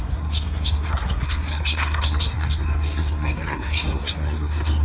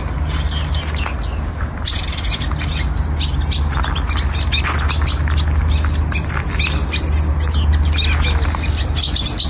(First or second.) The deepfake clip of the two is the first